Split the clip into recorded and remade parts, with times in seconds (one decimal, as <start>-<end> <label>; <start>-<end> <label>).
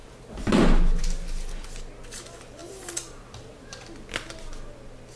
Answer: 0.0-5.2 recorded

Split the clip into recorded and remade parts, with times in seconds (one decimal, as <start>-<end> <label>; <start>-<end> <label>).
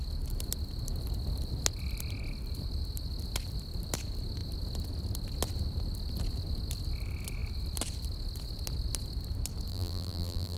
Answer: 0.0-9.7 recorded; 9.7-10.6 remade